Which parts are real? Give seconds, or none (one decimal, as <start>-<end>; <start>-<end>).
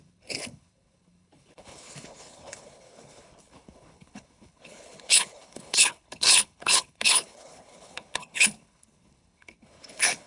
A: none